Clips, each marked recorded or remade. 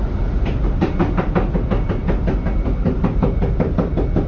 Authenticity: remade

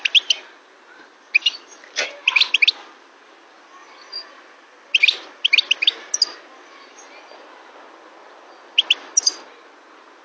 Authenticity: recorded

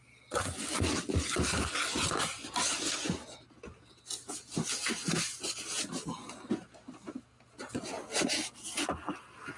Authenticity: recorded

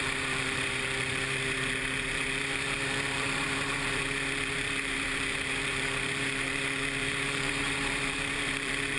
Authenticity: remade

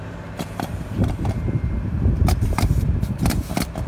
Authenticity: remade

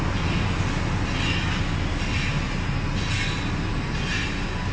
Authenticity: recorded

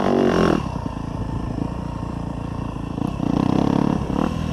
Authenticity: remade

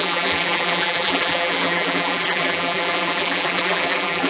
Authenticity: remade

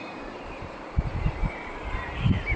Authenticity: remade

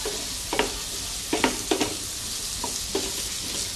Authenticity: recorded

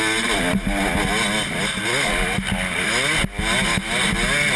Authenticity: recorded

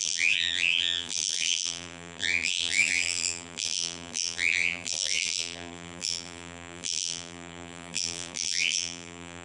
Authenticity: remade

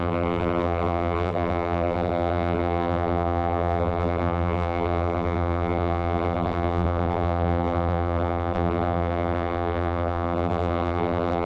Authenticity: remade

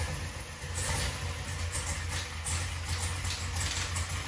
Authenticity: recorded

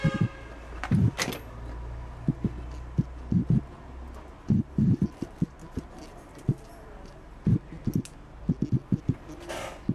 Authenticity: recorded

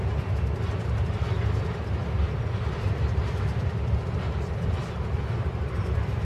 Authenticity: recorded